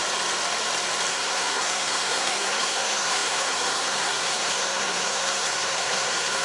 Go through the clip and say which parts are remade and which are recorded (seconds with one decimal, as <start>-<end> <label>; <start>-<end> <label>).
0.0-1.1 recorded; 1.1-6.4 remade